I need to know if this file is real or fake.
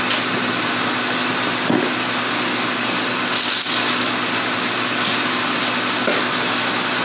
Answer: real